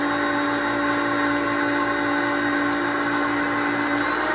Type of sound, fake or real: real